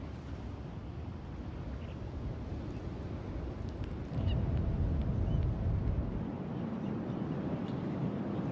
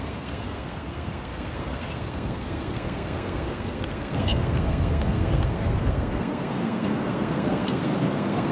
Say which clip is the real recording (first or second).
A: first